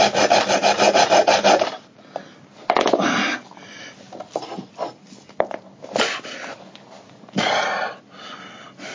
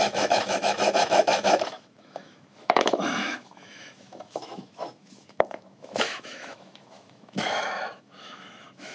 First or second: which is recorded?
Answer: first